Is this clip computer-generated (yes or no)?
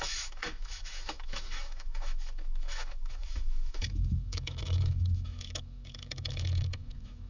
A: yes